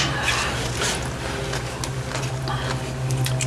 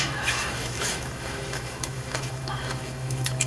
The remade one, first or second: second